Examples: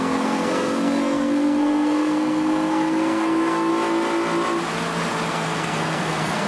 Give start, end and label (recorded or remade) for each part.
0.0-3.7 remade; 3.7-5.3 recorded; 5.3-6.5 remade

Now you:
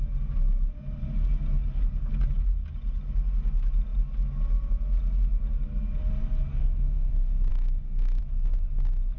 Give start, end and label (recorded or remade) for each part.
0.0-6.5 recorded; 6.5-7.1 remade; 7.1-7.5 recorded; 7.5-8.2 remade; 8.2-9.2 recorded

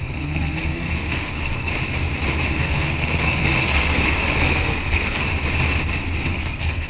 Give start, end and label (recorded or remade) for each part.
0.0-1.7 remade; 1.7-2.5 recorded; 2.5-5.3 remade; 5.3-6.3 recorded; 6.3-6.9 remade

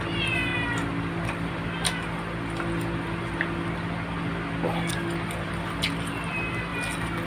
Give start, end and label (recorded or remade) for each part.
0.0-7.3 recorded